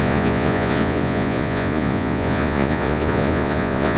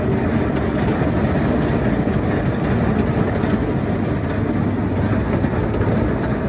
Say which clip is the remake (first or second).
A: first